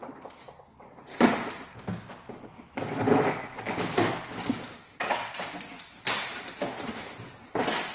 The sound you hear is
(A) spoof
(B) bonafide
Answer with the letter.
B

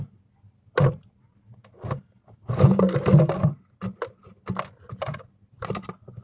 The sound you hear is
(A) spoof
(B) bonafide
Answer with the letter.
B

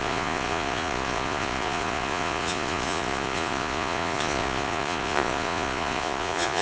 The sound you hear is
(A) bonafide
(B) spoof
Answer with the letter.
B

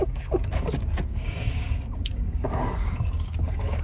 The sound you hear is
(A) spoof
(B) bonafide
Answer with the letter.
A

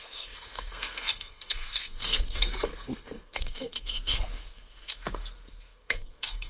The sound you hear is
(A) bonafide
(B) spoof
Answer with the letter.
B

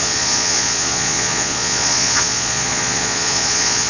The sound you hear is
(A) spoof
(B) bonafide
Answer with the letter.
A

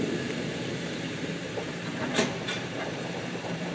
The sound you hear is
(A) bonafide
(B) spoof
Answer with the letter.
B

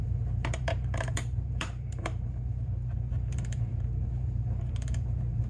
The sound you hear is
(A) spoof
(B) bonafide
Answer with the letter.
A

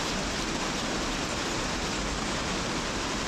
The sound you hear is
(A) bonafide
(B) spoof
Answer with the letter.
A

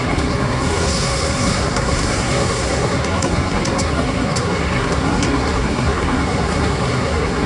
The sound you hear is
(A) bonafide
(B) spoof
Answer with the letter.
B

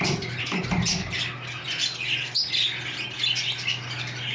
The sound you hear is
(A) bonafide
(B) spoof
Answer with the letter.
A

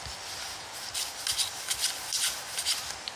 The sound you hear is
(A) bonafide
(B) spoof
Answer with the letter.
A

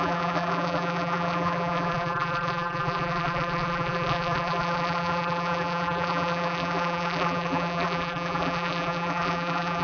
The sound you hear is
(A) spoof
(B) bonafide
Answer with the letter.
A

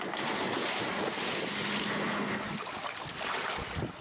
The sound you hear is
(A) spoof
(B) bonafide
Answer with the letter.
B